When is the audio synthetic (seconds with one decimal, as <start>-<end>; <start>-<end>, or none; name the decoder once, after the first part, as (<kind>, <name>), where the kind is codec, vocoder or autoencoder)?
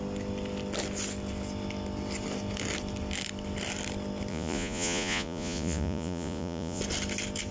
4.3-6.8 (vocoder, Vocos)